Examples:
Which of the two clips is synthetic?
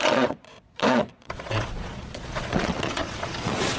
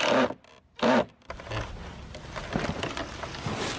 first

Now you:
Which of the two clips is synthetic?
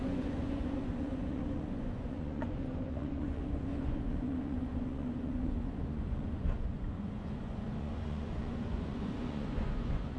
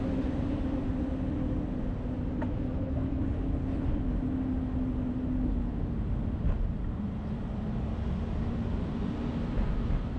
first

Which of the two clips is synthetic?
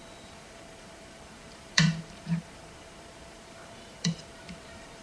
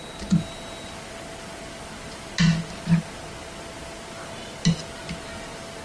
first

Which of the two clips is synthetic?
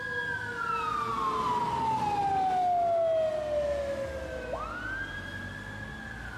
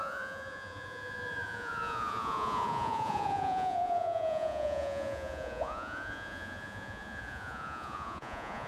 second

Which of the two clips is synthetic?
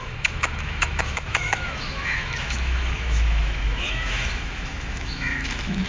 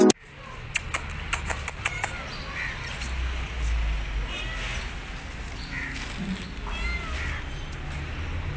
first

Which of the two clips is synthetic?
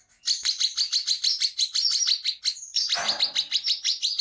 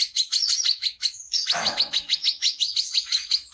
second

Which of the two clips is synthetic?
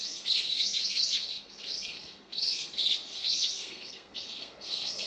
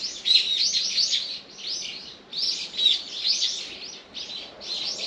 first